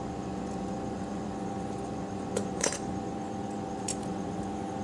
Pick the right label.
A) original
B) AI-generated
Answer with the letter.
B